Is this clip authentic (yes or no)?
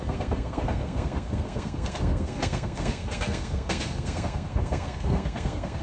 no